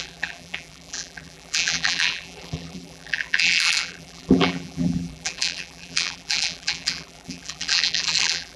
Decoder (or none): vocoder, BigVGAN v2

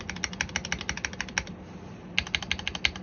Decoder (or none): none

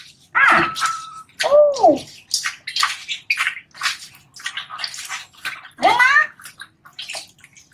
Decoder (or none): none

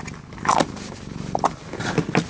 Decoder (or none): none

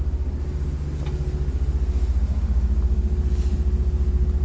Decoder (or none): none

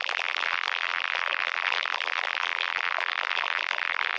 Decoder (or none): vocoder, BigVGAN v2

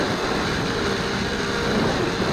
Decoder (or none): none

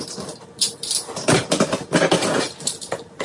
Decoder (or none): vocoder, BigVGAN v2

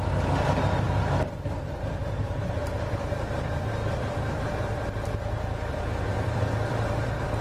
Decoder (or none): vocoder, BigVGAN v2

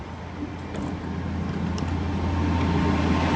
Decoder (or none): none